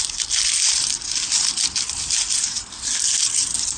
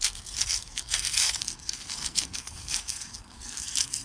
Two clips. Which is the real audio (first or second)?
first